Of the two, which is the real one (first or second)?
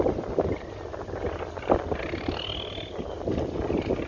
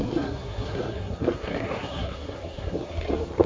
first